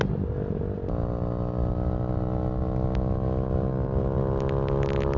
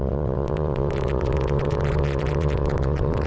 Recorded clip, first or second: first